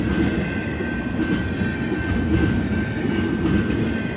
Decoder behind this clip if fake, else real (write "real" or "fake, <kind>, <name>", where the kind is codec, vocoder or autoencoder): real